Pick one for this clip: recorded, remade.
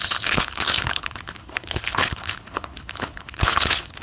remade